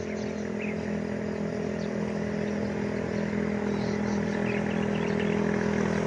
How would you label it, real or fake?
real